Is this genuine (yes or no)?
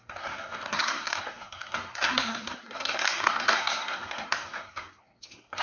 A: no